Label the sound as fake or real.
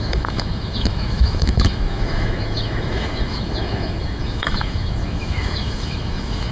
fake